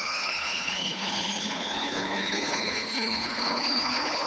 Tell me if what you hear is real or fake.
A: fake